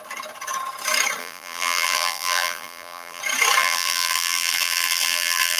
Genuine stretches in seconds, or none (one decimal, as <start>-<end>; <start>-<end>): 0.0-1.2; 3.2-3.6